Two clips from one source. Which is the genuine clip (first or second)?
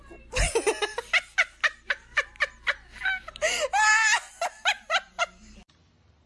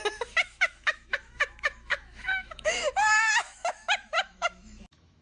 first